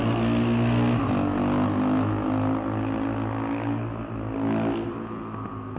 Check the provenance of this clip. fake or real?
real